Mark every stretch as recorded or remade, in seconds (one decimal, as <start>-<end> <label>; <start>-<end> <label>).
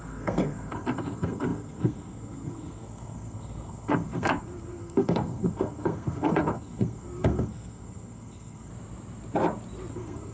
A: 0.0-8.7 remade; 8.7-9.9 recorded; 9.9-10.3 remade